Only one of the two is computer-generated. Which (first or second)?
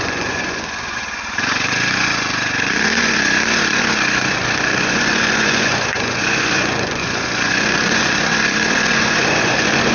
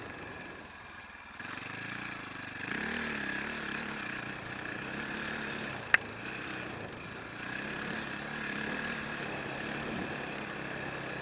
first